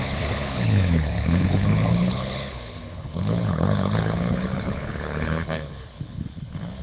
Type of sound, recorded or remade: remade